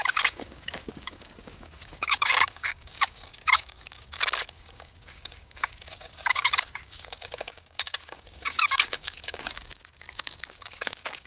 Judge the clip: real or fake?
fake